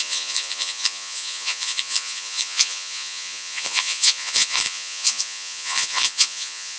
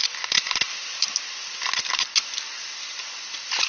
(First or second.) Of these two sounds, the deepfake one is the first